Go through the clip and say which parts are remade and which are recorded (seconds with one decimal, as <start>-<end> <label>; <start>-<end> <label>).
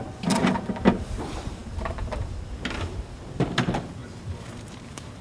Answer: 0.0-4.0 recorded; 4.0-5.2 remade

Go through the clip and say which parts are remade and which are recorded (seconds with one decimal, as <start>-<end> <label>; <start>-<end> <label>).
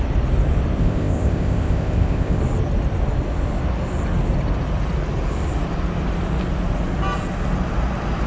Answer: 0.0-0.8 recorded; 0.8-2.4 remade; 2.4-8.3 recorded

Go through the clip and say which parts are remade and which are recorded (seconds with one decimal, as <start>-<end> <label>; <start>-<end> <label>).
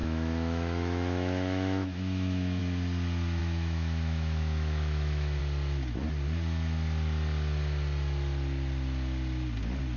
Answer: 0.0-2.6 remade; 2.6-3.4 recorded; 3.4-5.4 remade; 5.4-10.0 recorded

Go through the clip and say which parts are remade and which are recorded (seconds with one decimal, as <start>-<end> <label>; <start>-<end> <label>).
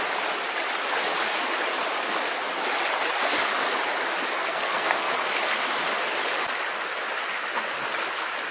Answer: 0.0-4.4 recorded; 4.4-5.1 remade; 5.1-8.5 recorded